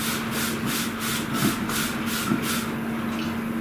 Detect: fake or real real